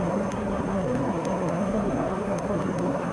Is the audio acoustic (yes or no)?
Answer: no